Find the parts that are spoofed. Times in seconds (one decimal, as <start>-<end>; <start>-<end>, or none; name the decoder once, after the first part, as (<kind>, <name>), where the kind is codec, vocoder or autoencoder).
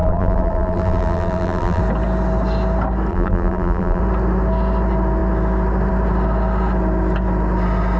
0.0-1.8 (vocoder, BigVGAN v2); 3.1-4.0